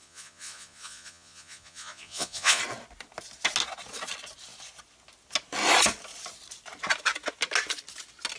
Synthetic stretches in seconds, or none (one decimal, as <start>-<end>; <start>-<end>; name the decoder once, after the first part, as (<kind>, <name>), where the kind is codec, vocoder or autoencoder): 0.0-2.6 (vocoder, Vocos)